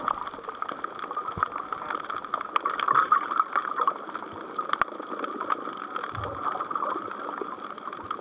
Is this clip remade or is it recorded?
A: recorded